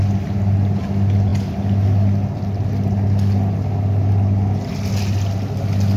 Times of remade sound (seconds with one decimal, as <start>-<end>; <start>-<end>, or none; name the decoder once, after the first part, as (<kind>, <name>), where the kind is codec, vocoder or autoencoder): none